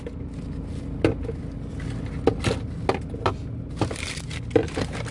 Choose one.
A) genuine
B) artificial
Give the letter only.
A